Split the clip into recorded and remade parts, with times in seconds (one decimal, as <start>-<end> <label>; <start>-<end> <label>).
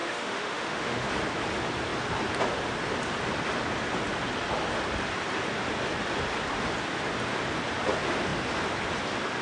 0.0-1.1 remade; 1.1-9.4 recorded